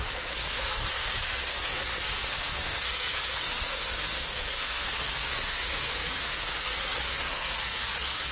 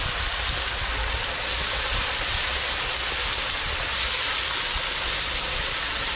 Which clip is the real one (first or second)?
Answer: second